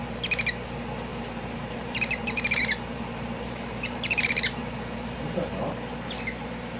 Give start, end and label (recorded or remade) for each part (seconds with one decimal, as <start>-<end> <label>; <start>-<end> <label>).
0.0-1.1 recorded; 1.1-4.6 remade; 4.6-6.8 recorded